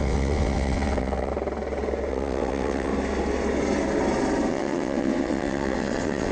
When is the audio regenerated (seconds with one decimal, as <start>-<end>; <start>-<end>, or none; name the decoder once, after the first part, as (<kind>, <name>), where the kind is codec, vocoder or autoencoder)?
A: 0.0-1.3 (vocoder, WaveNeXt); 2.1-2.9; 4.5-6.3